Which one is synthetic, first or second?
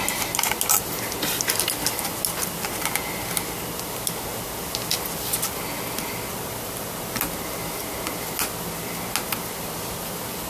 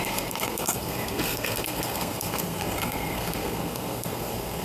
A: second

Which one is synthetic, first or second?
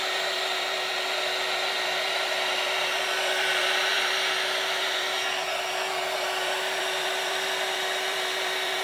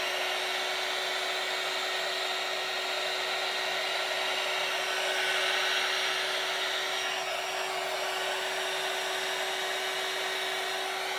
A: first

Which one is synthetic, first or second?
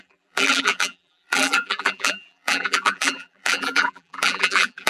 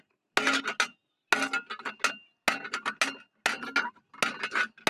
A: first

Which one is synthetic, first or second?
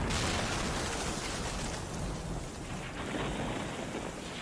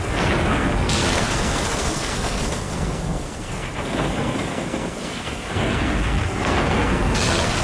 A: second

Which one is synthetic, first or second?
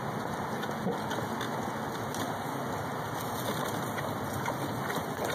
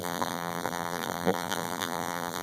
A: second